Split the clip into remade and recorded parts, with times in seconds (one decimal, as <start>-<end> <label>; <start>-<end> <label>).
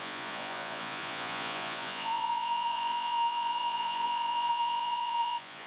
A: 0.0-5.7 remade